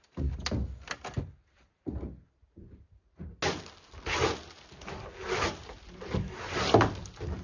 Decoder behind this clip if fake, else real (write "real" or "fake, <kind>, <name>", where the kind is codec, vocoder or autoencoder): real